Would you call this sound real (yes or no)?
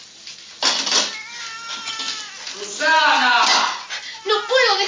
yes